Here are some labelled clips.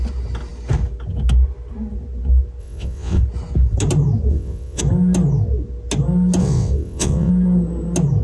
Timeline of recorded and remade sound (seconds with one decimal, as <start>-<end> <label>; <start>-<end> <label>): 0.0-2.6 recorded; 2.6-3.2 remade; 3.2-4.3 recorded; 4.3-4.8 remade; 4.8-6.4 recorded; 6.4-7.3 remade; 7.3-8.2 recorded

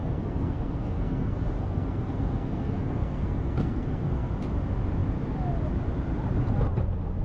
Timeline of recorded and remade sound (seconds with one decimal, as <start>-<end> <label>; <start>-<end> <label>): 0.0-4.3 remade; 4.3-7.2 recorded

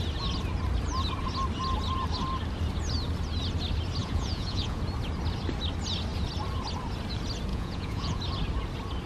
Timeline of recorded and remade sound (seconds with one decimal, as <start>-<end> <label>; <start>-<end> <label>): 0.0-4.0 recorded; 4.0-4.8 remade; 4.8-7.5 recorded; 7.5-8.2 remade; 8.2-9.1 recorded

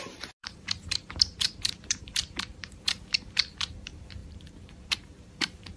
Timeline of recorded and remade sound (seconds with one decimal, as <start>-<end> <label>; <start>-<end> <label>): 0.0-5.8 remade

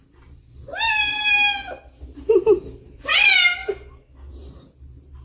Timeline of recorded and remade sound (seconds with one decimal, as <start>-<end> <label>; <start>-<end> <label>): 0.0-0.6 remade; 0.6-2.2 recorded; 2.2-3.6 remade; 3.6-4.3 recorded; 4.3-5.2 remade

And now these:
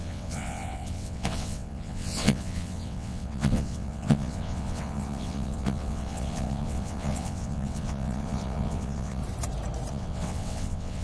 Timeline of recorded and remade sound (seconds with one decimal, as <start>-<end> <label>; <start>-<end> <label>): 0.0-9.2 remade; 9.2-9.9 recorded; 9.9-11.0 remade

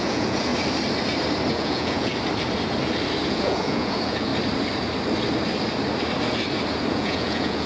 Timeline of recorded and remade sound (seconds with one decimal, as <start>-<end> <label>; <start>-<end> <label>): 0.0-0.5 remade; 0.5-1.5 recorded; 1.5-2.1 remade; 2.1-3.3 recorded; 3.3-4.3 remade; 4.3-6.9 recorded; 6.9-7.7 remade